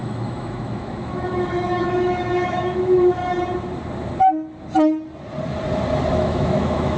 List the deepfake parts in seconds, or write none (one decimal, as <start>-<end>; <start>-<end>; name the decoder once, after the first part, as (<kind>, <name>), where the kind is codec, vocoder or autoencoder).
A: 0.0-3.2 (autoencoder, DAC-VAE); 6.1-7.0